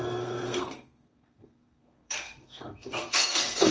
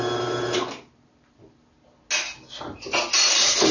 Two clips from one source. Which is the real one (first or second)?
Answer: second